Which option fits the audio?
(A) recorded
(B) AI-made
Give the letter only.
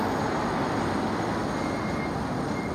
A